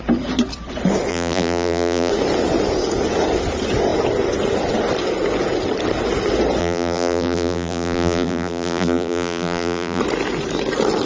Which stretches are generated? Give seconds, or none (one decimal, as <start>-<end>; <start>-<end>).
1.1-2.1; 6.6-10.0